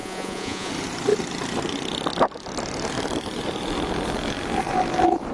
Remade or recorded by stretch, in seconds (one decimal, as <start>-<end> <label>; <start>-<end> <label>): 0.0-0.7 remade; 0.7-5.3 recorded